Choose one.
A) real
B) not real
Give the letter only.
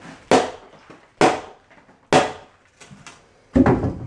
A